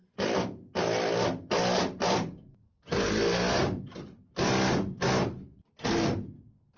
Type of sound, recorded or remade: recorded